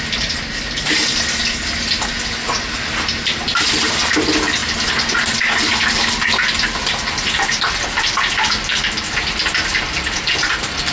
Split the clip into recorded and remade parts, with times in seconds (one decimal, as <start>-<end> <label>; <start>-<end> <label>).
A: 0.0-10.9 recorded